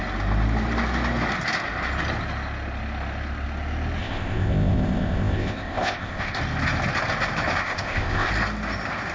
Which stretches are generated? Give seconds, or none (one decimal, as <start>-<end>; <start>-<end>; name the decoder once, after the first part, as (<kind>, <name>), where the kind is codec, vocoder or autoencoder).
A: 4.0-6.4 (codec, ZipCodec); 7.6-8.3